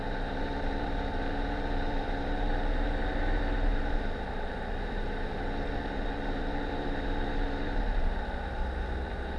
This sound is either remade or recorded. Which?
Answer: remade